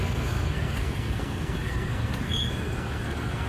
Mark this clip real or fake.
fake